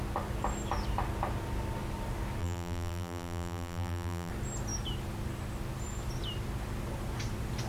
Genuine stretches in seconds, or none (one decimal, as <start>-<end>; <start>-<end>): 0.0-2.4; 4.3-7.7